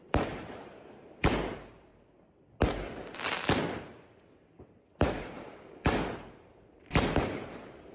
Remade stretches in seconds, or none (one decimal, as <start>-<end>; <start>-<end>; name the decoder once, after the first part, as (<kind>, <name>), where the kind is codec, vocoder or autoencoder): 0.0-1.9 (vocoder, BigVGAN v2); 4.7-7.9